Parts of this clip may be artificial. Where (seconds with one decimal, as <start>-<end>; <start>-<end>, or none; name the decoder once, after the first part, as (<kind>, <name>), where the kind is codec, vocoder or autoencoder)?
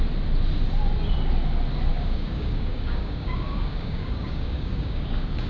1.9-5.5 (codec, DAC)